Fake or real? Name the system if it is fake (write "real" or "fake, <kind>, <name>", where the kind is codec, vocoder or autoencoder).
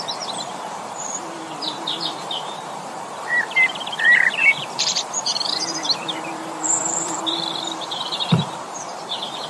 fake, vocoder, BigVGAN v2